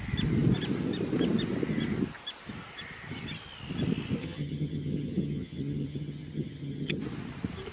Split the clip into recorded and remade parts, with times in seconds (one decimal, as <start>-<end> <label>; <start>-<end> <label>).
0.0-4.2 recorded; 4.2-7.0 remade; 7.0-7.7 recorded